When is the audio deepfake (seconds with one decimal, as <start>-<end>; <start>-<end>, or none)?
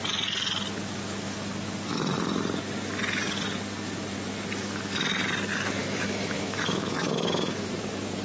5.8-7.7